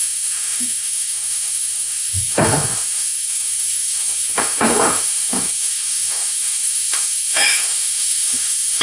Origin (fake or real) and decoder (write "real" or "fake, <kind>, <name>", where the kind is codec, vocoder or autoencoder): fake, autoencoder, DAC-VAE